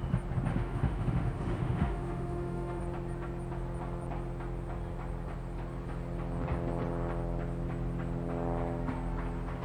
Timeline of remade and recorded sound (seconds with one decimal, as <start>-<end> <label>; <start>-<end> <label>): 0.0-0.5 recorded; 0.5-2.8 remade; 2.8-9.6 recorded